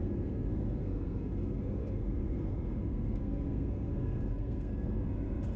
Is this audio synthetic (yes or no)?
yes